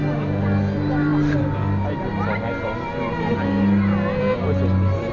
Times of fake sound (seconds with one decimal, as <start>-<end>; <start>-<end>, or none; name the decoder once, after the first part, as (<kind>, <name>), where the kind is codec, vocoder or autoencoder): none